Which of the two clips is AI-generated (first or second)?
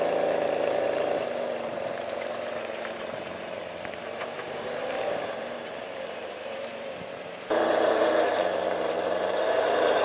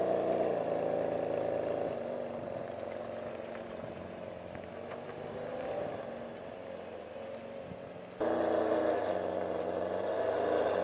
first